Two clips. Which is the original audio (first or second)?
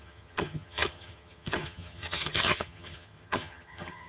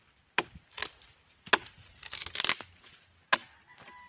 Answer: second